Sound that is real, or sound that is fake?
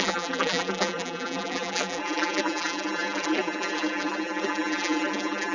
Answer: fake